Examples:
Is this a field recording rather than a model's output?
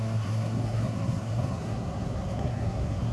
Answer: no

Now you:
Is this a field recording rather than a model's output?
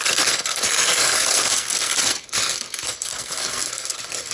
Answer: no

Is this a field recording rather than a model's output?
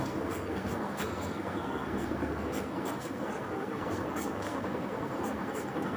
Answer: no